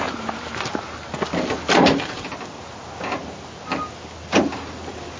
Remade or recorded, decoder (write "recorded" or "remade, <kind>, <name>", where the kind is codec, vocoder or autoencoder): recorded